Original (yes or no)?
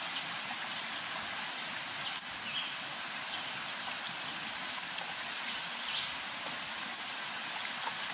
yes